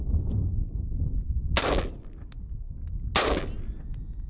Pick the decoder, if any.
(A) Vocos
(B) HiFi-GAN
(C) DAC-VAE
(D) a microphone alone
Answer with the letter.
D